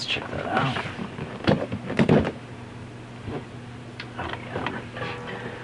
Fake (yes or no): no